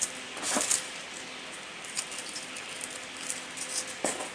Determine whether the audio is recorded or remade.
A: recorded